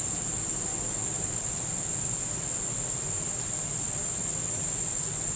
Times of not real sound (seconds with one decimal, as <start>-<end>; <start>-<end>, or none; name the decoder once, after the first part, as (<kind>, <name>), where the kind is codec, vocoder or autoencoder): none